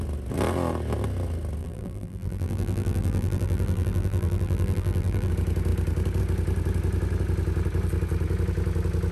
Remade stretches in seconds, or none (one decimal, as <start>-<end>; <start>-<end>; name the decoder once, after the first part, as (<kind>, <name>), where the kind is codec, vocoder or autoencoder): 1.6-5.3 (vocoder, BigVGAN v2)